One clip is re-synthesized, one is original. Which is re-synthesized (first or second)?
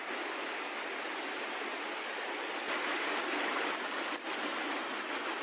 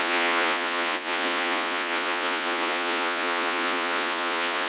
second